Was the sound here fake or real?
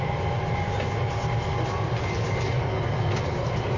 real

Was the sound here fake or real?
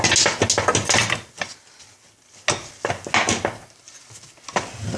real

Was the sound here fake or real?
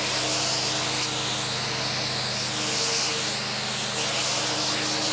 real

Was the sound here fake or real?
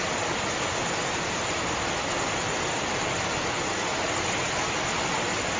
real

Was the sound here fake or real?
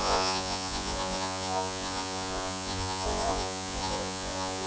fake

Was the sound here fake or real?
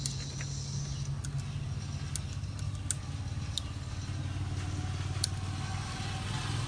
real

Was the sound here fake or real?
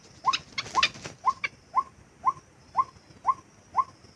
real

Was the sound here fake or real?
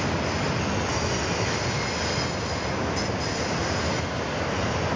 real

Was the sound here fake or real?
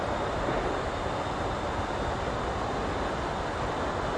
real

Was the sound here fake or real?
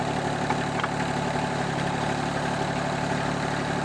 real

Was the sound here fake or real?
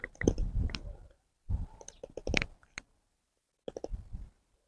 fake